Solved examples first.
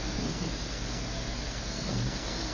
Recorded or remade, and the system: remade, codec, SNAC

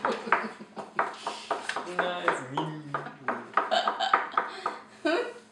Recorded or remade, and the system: recorded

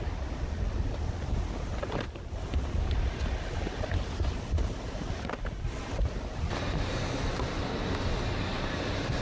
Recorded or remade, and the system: recorded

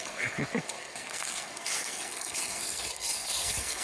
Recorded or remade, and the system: remade, codec, SNAC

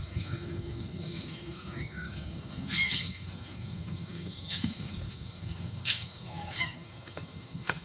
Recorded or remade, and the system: remade, codec, SNAC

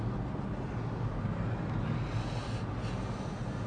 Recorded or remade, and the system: recorded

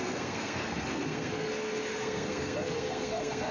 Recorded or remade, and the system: remade, codec, SNAC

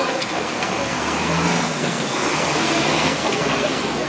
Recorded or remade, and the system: remade, codec, SNAC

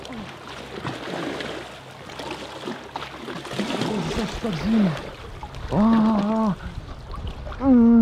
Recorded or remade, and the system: recorded